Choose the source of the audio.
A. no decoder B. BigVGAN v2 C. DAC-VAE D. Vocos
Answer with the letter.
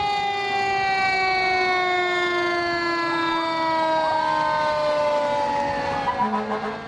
A